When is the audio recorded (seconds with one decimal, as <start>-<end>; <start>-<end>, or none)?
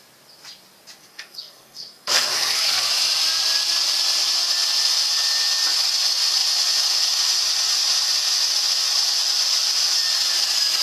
0.0-1.0; 2.9-10.8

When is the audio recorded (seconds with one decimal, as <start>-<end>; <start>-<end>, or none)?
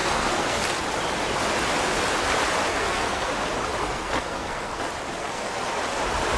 0.6-2.7; 3.3-3.8; 4.8-5.2; 5.7-6.4